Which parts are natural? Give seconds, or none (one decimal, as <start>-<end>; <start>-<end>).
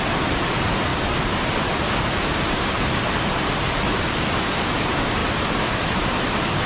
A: 0.0-6.7